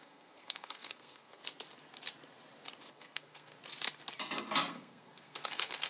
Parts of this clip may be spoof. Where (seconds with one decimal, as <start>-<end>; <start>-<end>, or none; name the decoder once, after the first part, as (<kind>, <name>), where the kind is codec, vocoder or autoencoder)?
0.0-1.4 (codec, SNAC); 2.9-3.6; 4.7-5.9